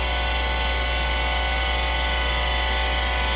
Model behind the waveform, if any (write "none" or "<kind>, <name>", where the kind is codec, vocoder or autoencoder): none